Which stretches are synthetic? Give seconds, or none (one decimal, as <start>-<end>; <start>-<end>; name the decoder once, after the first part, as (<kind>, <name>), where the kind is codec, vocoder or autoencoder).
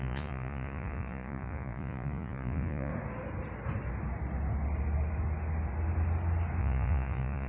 0.0-2.9 (vocoder, Vocos); 6.6-7.5